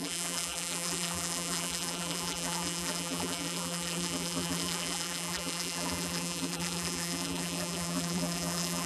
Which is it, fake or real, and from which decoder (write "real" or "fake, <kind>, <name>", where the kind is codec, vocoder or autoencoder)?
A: fake, vocoder, BigVGAN v2